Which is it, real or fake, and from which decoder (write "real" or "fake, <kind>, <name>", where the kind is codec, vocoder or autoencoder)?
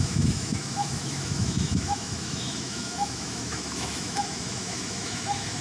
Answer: fake, autoencoder, DAC-VAE